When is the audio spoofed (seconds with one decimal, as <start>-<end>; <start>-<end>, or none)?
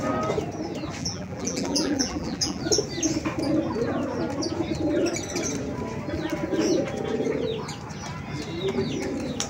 1.0-2.6